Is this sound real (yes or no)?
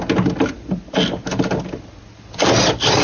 yes